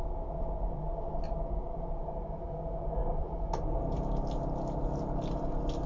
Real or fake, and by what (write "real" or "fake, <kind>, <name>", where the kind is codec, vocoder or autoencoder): real